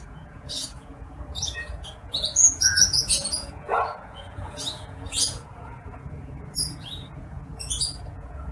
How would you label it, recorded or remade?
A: remade